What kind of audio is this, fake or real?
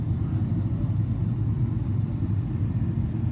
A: real